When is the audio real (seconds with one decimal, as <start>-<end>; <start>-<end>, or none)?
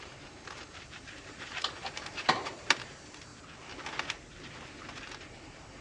3.3-4.9